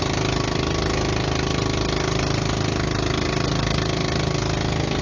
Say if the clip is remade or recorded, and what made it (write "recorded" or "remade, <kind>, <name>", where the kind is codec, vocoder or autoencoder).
recorded